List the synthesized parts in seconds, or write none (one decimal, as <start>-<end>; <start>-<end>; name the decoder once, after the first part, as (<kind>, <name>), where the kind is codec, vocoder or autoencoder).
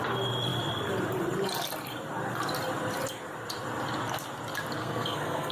4.8-5.5 (codec, SNAC)